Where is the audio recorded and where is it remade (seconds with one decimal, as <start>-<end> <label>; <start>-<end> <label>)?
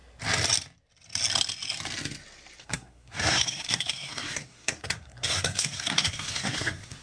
0.0-2.6 recorded; 2.6-7.0 remade